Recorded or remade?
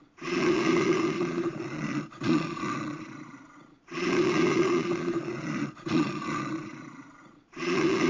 remade